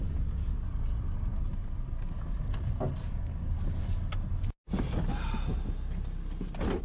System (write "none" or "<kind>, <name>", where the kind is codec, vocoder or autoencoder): none